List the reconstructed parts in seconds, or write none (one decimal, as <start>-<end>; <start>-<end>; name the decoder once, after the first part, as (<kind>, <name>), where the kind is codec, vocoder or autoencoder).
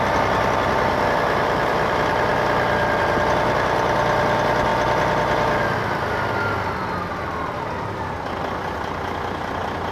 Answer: none